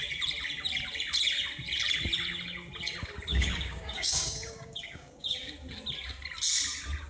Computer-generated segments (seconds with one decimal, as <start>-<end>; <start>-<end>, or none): 3.3-5.5